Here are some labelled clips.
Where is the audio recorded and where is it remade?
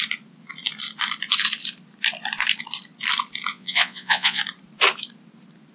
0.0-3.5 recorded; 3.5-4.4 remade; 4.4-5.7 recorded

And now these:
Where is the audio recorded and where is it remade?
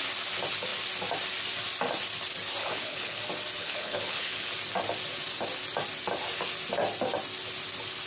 0.0-2.6 recorded; 2.6-3.2 remade; 3.2-3.6 recorded; 3.6-4.5 remade; 4.5-8.1 recorded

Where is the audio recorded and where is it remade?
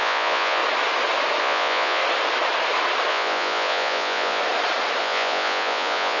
0.0-0.6 remade; 0.6-1.4 recorded; 1.4-2.0 remade; 2.0-3.1 recorded; 3.1-4.4 remade; 4.4-5.0 recorded; 5.0-6.2 remade